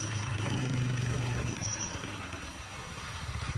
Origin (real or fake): fake